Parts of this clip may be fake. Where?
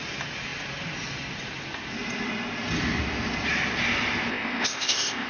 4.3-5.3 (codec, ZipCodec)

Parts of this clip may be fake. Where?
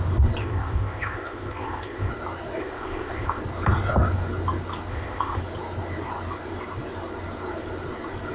0.4-2.1 (codec, ZipCodec); 2.6-3.4; 4.9-5.4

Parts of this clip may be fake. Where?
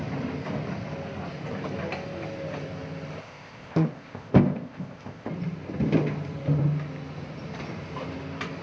3.2-5.3 (codec, ZipCodec)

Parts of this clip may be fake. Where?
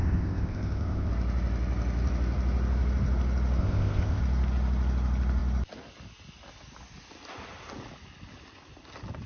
0.0-1.1 (codec, ZipCodec); 3.6-4.2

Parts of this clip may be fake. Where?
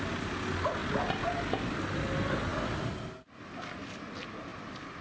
none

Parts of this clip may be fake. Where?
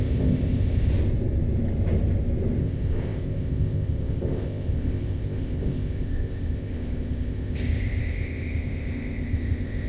0.0-0.9 (codec, ZipCodec); 2.6-9.9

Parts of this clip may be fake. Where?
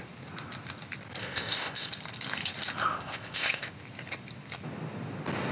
1.2-1.9 (codec, ZipCodec); 2.9-3.7